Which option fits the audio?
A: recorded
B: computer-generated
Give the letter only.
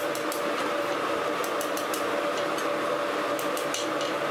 A